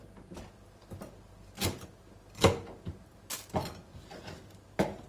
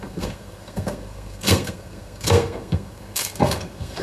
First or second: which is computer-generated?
second